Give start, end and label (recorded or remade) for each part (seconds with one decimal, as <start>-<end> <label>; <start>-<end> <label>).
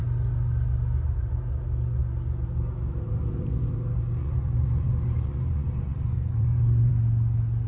0.0-4.2 recorded; 4.2-6.9 remade; 6.9-7.7 recorded